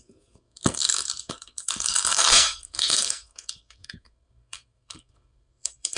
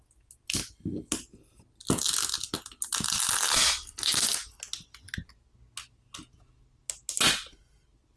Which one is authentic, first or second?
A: second